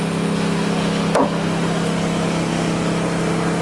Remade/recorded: recorded